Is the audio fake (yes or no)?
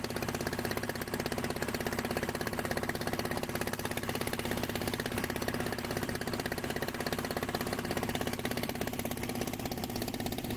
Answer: yes